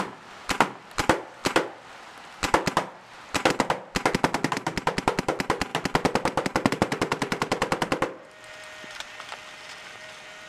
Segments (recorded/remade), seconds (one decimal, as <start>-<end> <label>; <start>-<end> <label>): 0.0-1.4 remade; 1.4-4.5 recorded; 4.5-5.7 remade; 5.7-6.7 recorded; 6.7-10.5 remade

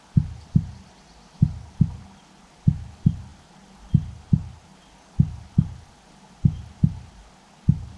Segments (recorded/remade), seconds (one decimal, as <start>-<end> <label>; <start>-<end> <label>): 0.0-8.0 recorded

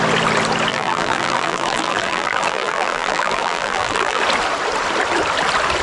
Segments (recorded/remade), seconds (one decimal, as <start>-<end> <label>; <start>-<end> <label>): 0.0-0.7 recorded; 0.7-4.2 remade; 4.2-5.8 recorded

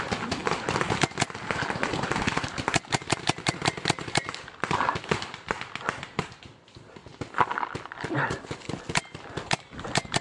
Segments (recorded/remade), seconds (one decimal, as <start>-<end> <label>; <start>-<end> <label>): 0.0-0.4 remade; 0.4-1.4 recorded; 1.4-7.0 remade; 7.0-8.0 recorded; 8.0-10.2 remade